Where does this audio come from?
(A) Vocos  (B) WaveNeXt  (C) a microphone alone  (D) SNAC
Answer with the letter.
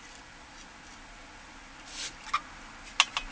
C